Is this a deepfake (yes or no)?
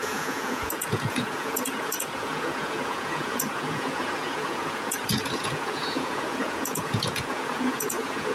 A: yes